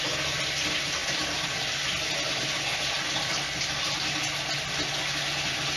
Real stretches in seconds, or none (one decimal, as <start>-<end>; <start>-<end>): 0.0-2.7; 4.2-5.8